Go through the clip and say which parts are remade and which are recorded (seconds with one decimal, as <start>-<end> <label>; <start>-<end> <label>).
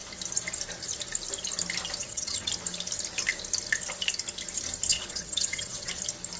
0.0-2.0 recorded; 2.0-2.5 remade; 2.5-4.9 recorded; 4.9-5.9 remade; 5.9-6.4 recorded